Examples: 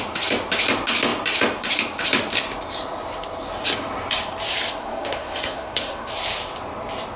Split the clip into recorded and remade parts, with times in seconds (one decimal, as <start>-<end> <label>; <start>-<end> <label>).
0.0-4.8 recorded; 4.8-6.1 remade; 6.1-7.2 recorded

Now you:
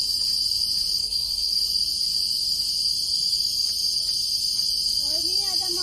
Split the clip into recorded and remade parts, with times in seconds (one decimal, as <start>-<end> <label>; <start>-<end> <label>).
0.0-1.0 recorded; 1.0-1.6 remade; 1.6-5.8 recorded

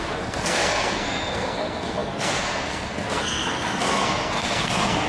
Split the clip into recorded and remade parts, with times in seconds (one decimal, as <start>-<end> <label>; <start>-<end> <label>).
0.0-5.1 remade

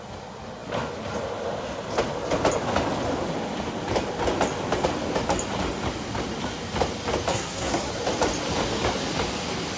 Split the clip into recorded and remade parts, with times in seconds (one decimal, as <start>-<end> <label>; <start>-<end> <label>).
0.0-7.3 recorded; 7.3-7.9 remade; 7.9-9.8 recorded